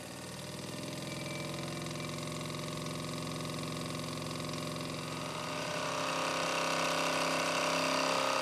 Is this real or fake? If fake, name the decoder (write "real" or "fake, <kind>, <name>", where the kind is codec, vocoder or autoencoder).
real